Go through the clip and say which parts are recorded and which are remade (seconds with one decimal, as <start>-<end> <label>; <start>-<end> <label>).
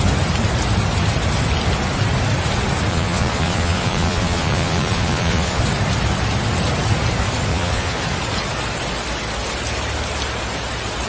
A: 0.0-2.9 recorded; 2.9-5.6 remade; 5.6-7.5 recorded; 7.5-8.0 remade; 8.0-11.1 recorded